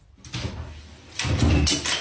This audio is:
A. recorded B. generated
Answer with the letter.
A